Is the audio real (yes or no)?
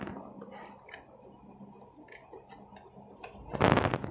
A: yes